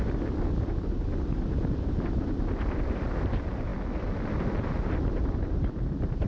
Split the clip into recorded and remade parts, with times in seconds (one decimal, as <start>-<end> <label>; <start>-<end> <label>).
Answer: 0.0-6.3 recorded